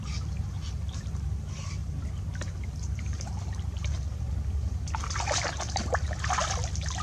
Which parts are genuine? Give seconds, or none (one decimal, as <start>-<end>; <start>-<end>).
0.0-7.0

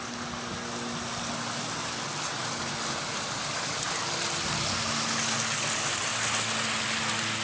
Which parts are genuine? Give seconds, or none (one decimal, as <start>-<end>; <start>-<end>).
0.0-7.4

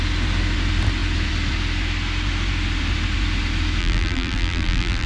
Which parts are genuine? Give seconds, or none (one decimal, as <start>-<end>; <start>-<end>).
0.0-3.8

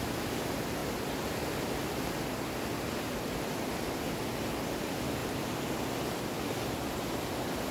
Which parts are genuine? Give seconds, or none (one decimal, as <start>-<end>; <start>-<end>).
0.0-5.2; 6.2-7.7

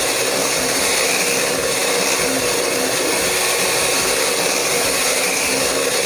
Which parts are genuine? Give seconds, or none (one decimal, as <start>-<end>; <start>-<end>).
0.0-0.4; 1.3-4.6; 5.5-6.1

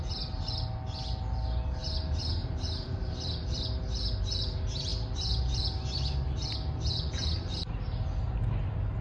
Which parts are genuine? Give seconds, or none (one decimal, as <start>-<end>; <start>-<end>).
0.0-2.4; 3.6-4.9; 5.4-9.0

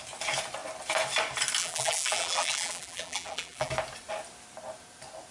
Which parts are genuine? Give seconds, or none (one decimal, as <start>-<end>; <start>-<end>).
0.0-1.6; 3.7-5.3